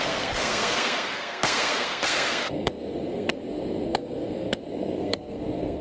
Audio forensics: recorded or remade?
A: remade